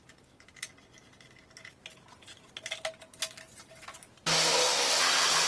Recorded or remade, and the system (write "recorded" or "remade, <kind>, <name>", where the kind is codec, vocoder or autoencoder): recorded